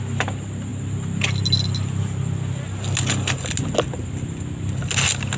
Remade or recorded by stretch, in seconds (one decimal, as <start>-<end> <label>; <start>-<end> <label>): 0.0-5.4 recorded